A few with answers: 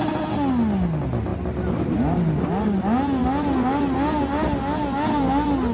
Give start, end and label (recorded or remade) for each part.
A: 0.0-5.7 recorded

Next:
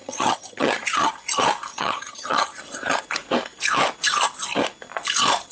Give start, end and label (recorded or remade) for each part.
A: 0.0-1.1 remade; 1.1-1.7 recorded; 1.7-2.6 remade; 2.6-5.5 recorded

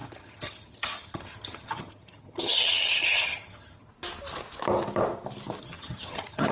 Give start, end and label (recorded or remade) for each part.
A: 0.0-3.9 remade; 3.9-5.6 recorded; 5.6-6.5 remade

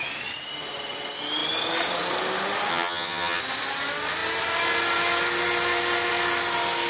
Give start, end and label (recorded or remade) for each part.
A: 0.0-2.7 recorded; 2.7-3.4 remade; 3.4-6.9 recorded

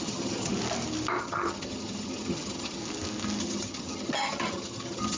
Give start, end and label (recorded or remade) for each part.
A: 0.0-0.5 remade; 0.5-1.2 recorded; 1.2-2.8 remade; 2.8-3.4 recorded; 3.4-5.2 remade

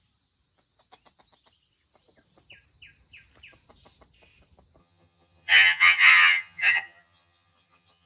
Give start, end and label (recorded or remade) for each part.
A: 0.0-4.8 recorded; 4.8-8.1 remade